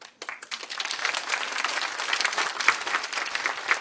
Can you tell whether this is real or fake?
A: real